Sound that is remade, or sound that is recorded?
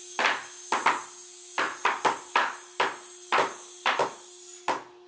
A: recorded